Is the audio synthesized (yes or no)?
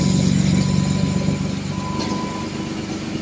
no